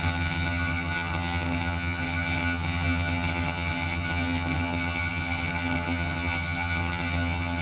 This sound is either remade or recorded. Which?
remade